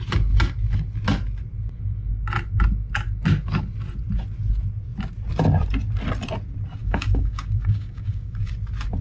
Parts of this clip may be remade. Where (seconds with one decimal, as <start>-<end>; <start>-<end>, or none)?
6.8-8.5